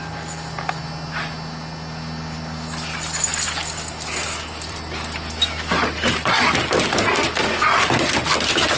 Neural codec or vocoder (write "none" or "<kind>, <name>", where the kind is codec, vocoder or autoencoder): none